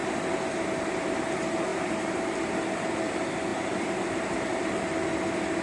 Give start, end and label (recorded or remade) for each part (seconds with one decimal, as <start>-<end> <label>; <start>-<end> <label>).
0.0-1.7 recorded; 1.7-2.4 remade; 2.4-3.5 recorded; 3.5-4.8 remade; 4.8-5.6 recorded

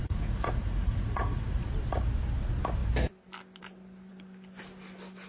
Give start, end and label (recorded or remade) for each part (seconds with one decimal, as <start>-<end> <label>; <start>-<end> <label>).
0.0-1.7 remade; 1.7-5.3 recorded

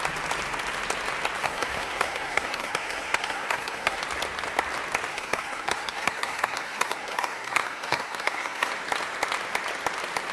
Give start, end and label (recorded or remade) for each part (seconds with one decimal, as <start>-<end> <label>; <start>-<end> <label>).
0.0-1.4 recorded; 1.4-4.0 remade; 4.0-5.1 recorded; 5.1-8.7 remade; 8.7-10.3 recorded

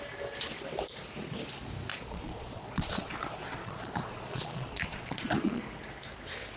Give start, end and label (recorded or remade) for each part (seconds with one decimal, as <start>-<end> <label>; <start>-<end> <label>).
0.0-1.9 recorded; 1.9-5.6 remade; 5.6-6.6 recorded

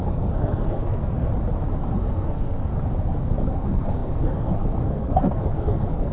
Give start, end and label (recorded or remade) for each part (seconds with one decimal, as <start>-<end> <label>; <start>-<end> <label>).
0.0-1.3 remade; 1.3-2.0 recorded; 2.0-2.7 remade; 2.7-3.5 recorded; 3.5-6.1 remade